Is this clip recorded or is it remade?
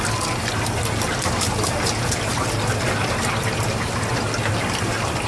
recorded